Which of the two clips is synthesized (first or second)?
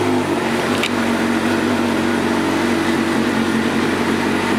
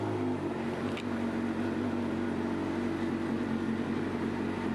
first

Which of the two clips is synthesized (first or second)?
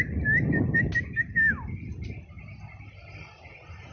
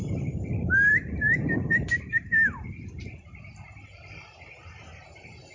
second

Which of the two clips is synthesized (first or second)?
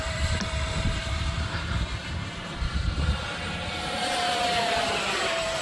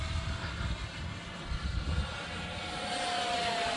first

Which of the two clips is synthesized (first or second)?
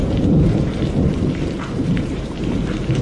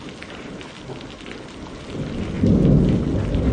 first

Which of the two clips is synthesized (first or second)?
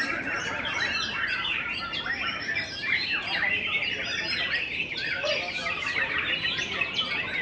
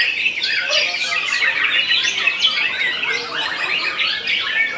first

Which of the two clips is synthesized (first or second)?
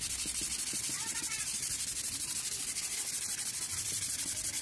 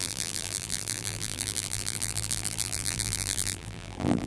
second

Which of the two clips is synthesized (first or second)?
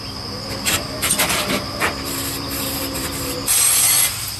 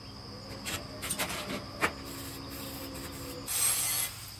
first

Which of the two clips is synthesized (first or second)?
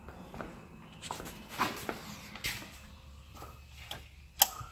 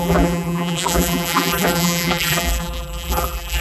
second